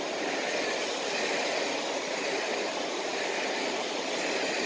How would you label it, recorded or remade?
recorded